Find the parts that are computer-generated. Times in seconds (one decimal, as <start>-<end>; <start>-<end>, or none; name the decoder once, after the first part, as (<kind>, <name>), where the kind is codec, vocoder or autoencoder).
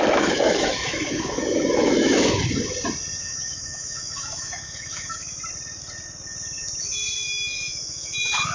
0.0-2.4 (autoencoder, DAC-VAE); 3.2-5.4; 6.8-8.5